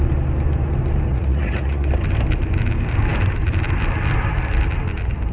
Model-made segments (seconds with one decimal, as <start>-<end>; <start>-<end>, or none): 1.1-1.9